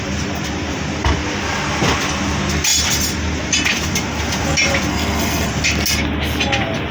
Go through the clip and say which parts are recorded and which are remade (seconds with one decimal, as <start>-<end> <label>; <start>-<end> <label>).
0.0-4.9 recorded; 4.9-5.5 remade; 5.5-6.9 recorded

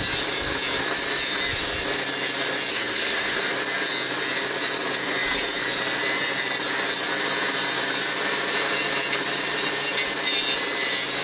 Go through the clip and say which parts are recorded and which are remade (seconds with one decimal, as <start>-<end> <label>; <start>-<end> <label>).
0.0-2.7 recorded; 2.7-3.4 remade; 3.4-11.2 recorded